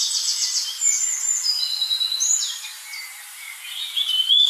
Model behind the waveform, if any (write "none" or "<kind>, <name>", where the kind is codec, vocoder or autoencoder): none